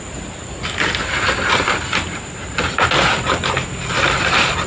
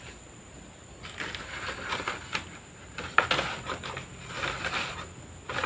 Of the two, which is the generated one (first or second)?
first